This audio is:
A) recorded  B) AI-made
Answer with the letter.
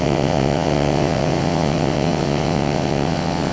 B